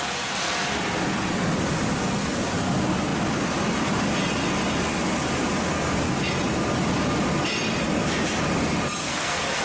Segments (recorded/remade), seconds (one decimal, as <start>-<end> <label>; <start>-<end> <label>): 0.0-9.0 recorded; 9.0-9.6 remade